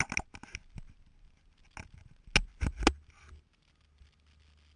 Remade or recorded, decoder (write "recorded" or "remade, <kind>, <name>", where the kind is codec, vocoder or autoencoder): recorded